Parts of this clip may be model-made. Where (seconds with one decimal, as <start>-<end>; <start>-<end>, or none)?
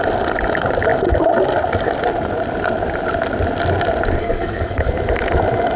4.2-4.9